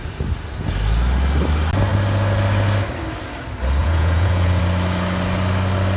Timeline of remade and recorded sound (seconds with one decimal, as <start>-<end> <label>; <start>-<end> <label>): 0.0-3.8 recorded; 3.8-4.6 remade; 4.6-6.0 recorded